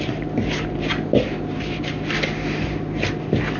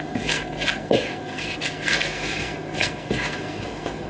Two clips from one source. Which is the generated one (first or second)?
second